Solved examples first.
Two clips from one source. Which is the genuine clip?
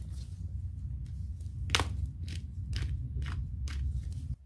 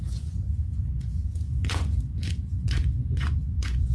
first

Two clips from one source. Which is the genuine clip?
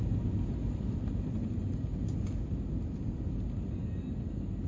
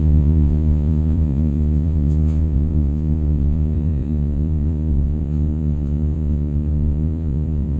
first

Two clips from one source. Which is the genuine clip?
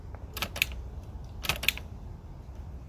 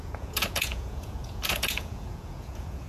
first